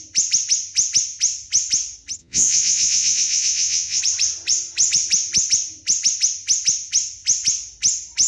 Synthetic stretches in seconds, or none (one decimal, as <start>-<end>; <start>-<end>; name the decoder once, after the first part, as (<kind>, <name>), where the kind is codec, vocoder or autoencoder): 2.2-4.0 (vocoder, Vocos)